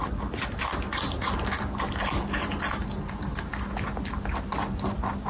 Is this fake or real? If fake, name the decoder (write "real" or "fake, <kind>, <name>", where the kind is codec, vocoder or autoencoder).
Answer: real